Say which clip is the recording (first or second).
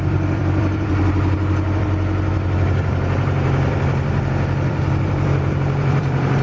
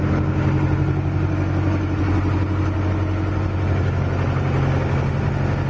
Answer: second